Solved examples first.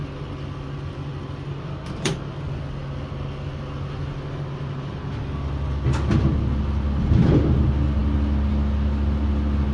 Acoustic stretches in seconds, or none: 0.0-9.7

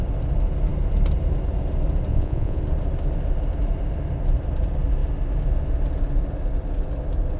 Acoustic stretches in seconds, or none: 0.0-2.1; 2.6-7.4

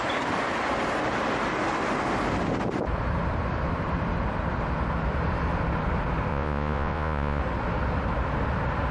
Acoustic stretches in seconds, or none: 0.0-6.3; 7.4-8.9

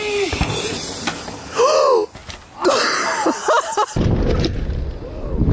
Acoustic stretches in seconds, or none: 0.0-5.5